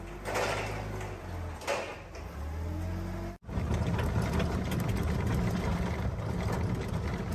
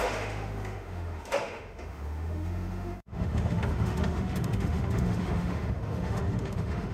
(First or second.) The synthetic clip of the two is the second